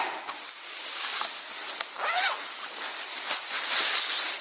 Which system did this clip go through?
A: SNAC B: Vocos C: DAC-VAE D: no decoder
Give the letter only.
D